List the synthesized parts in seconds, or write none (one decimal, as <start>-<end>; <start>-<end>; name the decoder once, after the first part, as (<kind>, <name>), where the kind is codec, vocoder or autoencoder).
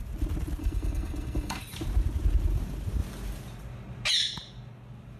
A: 0.6-1.6 (codec, SNAC)